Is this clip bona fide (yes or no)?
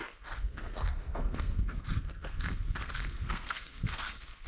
no